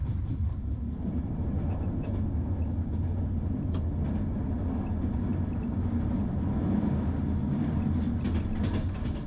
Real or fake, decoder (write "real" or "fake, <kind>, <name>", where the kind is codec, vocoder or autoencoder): real